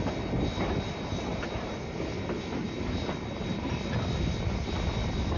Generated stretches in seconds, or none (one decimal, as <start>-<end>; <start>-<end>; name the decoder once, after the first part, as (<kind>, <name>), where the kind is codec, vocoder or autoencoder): none